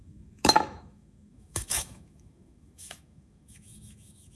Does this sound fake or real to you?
fake